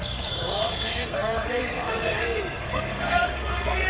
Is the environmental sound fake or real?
fake